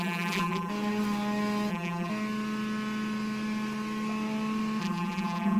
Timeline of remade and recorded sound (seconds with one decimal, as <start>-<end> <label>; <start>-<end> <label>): 0.0-0.7 remade; 0.7-1.7 recorded; 1.7-2.1 remade; 2.1-4.8 recorded; 4.8-5.6 remade